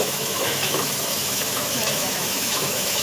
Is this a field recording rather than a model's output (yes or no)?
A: no